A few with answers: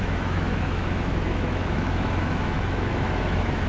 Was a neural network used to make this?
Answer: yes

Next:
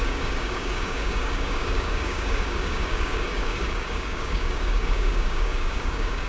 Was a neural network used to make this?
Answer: yes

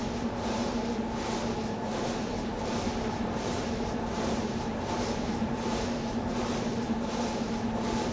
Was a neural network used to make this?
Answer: yes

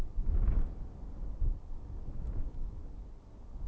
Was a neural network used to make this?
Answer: no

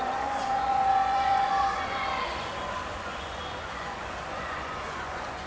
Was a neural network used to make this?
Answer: yes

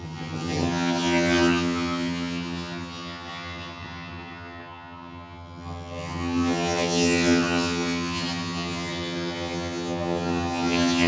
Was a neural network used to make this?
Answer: yes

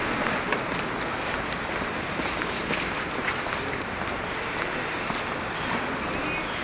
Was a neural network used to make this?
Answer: no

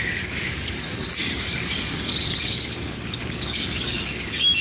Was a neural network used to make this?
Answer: yes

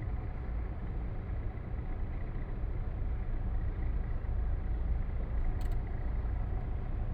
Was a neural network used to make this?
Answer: no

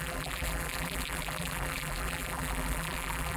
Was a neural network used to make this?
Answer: yes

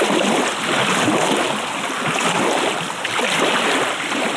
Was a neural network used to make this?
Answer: no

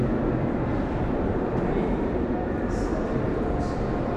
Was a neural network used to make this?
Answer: yes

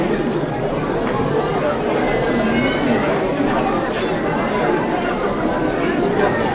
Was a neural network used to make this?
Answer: no